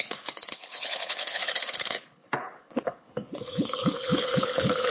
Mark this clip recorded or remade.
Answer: remade